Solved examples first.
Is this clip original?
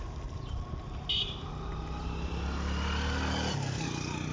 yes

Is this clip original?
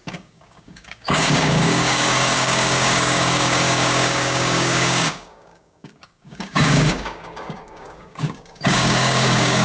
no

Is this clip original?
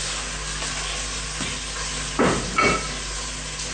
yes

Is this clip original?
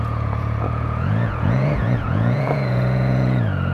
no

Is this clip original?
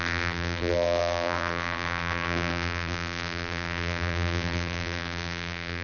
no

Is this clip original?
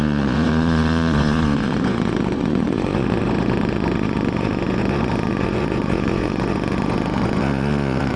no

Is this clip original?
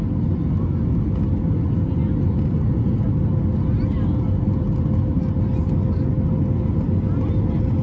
yes